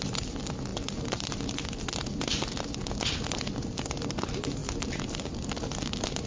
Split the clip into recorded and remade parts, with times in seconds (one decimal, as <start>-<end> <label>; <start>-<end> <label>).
0.0-6.3 recorded